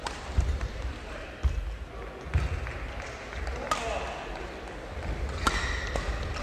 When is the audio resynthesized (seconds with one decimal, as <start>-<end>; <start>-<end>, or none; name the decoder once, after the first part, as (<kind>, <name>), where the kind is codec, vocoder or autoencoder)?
0.0-1.9 (vocoder, BigVGAN v2)